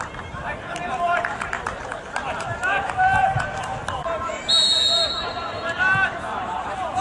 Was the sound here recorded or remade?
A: recorded